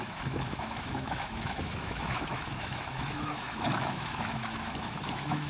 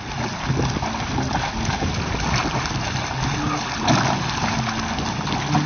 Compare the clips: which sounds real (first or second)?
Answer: second